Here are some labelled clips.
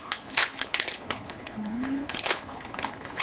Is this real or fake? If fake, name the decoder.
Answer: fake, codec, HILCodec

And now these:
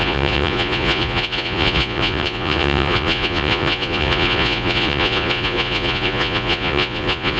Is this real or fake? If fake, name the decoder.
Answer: fake, vocoder, Vocos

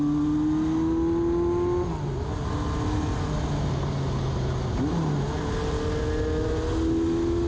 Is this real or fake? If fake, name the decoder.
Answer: real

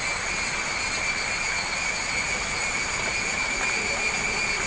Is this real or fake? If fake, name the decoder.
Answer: real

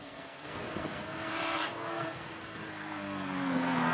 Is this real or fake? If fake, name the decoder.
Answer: fake, codec, SNAC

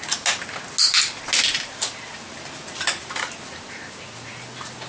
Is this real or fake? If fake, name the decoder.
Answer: real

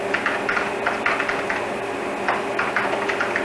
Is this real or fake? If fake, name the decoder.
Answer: real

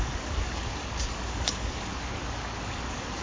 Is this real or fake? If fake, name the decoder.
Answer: fake, codec, DAC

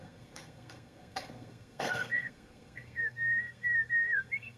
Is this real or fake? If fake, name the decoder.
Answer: fake, codec, SNAC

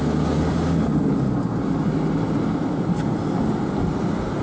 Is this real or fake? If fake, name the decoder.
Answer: real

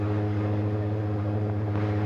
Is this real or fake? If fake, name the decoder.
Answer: real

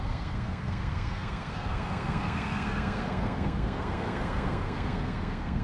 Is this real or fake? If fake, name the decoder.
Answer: fake, codec, SNAC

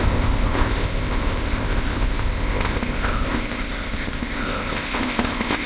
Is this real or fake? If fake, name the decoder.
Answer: fake, codec, ZipCodec